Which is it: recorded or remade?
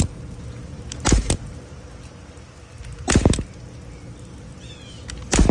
recorded